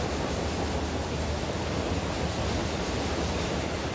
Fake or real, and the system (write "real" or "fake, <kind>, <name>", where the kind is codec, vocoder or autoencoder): real